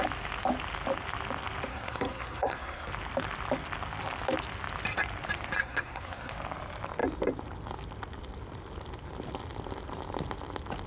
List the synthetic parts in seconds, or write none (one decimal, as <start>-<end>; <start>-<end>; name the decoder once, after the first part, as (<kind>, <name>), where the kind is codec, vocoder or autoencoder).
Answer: 1.7-2.9 (codec, SNAC); 5.6-6.3